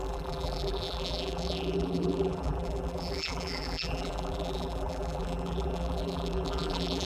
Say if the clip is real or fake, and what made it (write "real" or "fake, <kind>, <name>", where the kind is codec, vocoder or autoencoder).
fake, vocoder, BigVGAN v2